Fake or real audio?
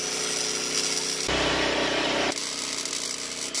real